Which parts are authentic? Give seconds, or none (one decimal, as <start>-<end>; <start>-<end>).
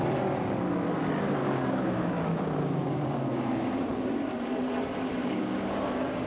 0.0-1.4; 4.1-5.2